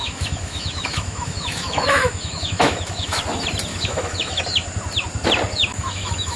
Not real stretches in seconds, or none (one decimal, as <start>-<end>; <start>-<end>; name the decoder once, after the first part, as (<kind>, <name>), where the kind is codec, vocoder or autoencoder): 0.0-3.2 (autoencoder, DAC-VAE); 3.7-4.4; 5.7-6.4